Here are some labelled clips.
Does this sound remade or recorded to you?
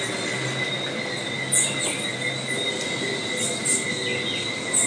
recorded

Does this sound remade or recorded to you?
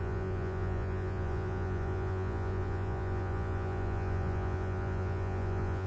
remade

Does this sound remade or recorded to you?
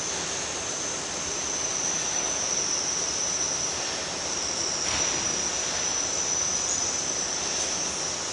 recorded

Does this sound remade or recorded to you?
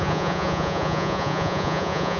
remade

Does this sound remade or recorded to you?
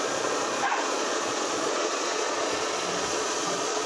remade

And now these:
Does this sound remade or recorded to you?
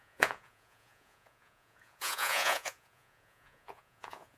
remade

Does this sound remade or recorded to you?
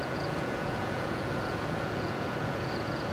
remade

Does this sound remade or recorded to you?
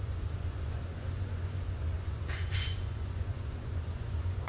remade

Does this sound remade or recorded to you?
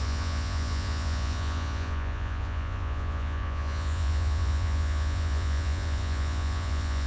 remade